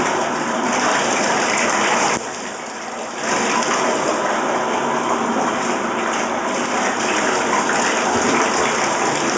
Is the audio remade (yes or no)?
yes